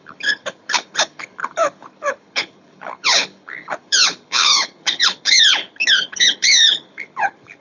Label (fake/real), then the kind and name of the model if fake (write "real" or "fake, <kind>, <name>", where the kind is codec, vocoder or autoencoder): fake, codec, HILCodec